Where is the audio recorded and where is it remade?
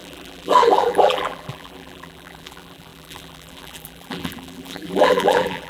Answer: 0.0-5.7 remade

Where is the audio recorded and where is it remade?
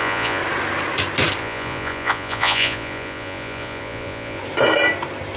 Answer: 0.0-0.4 remade; 0.4-1.4 recorded; 1.4-4.4 remade; 4.4-5.4 recorded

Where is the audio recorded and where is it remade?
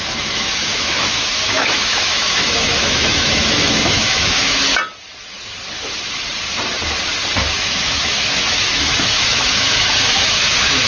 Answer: 0.0-4.7 remade; 4.7-7.6 recorded; 7.6-10.9 remade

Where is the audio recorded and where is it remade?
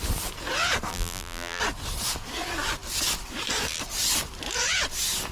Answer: 0.0-0.9 recorded; 0.9-1.6 remade; 1.6-5.3 recorded